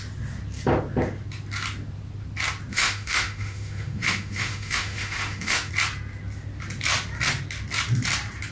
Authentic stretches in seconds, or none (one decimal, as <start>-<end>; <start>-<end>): 0.0-2.7; 5.7-8.5